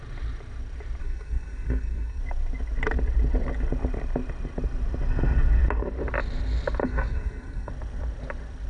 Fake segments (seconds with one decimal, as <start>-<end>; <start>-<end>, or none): 1.0-2.2; 6.8-7.7